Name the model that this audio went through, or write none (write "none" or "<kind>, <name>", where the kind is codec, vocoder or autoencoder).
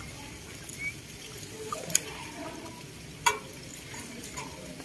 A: none